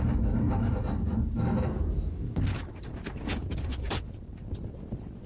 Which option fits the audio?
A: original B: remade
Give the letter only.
A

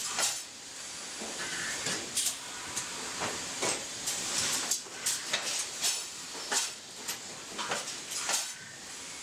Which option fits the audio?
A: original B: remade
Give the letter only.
A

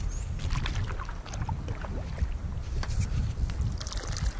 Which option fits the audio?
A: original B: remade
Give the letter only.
A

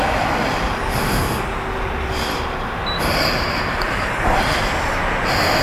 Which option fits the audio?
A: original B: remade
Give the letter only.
A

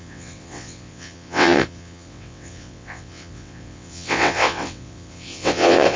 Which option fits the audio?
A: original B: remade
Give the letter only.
B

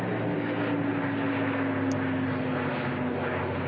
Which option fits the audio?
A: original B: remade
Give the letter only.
A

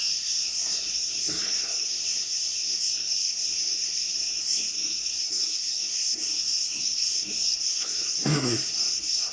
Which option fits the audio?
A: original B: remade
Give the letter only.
B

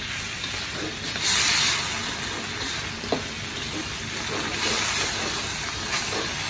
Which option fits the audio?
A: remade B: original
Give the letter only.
B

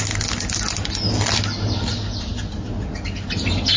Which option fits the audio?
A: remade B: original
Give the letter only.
B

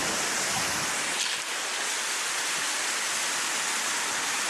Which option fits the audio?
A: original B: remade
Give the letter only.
A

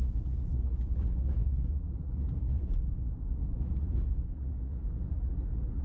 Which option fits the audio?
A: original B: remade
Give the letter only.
B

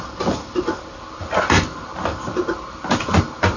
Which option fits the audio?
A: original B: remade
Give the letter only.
A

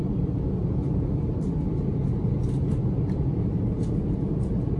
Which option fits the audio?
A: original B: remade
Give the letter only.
A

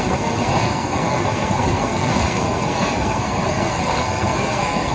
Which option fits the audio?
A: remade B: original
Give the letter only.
A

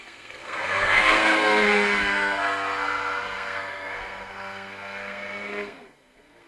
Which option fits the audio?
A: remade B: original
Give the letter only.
A